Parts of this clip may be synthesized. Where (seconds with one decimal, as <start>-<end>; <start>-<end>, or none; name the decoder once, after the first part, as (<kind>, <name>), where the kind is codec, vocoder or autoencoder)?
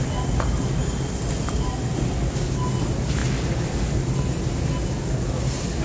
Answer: 0.0-0.8 (vocoder, BigVGAN v2); 2.8-3.2